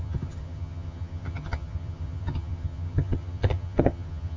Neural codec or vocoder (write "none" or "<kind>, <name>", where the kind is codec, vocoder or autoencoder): vocoder, HiFi-GAN